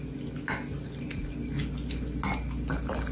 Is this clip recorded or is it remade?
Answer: recorded